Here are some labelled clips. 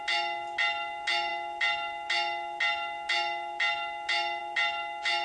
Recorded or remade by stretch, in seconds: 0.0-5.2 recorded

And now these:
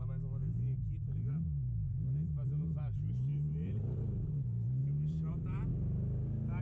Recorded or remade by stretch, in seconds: 0.0-1.3 recorded; 1.3-6.6 remade

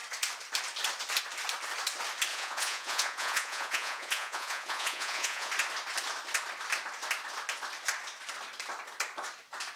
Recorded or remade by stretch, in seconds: 0.0-2.3 recorded; 2.3-5.5 remade; 5.5-9.8 recorded

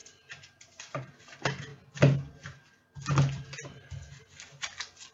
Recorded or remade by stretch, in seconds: 0.0-1.7 remade; 1.7-5.1 recorded

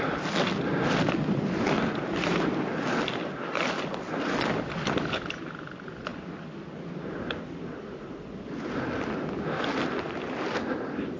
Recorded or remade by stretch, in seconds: 0.0-11.2 recorded

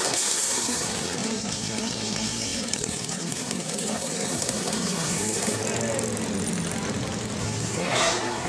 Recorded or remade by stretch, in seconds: 0.0-5.6 remade; 5.6-7.4 recorded; 7.4-8.5 remade